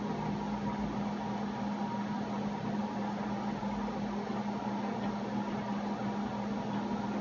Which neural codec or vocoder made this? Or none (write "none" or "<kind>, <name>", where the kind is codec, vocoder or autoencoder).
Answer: none